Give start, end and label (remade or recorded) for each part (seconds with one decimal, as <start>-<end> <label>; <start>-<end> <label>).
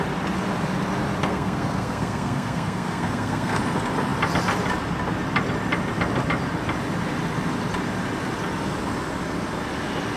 0.0-1.2 recorded; 1.2-3.6 remade; 3.6-10.2 recorded